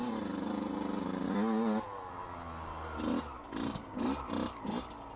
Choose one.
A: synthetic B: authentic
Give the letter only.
B